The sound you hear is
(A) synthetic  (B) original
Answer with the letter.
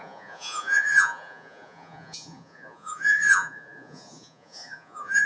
A